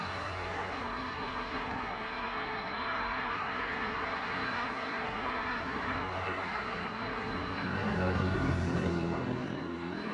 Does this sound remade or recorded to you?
remade